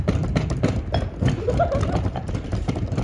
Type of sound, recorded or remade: recorded